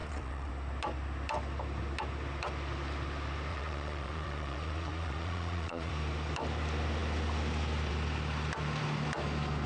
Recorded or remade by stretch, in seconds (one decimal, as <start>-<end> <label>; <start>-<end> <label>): 0.0-0.5 remade; 0.5-3.5 recorded; 3.5-5.9 remade; 5.9-9.7 recorded